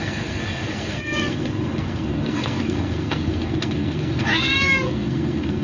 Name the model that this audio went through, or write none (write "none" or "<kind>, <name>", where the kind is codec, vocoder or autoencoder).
codec, SNAC